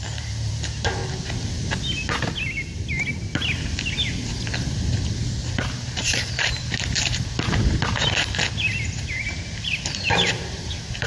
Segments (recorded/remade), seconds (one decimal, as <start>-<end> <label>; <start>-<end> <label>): 0.0-1.0 remade; 1.0-5.7 recorded; 5.7-11.1 remade